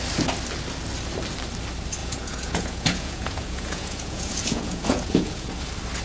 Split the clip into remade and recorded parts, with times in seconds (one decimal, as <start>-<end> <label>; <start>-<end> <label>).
0.0-2.0 recorded; 2.0-5.6 remade; 5.6-6.0 recorded